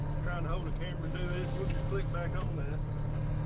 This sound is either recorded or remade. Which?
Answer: recorded